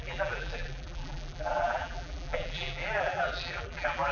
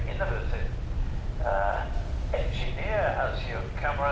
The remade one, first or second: first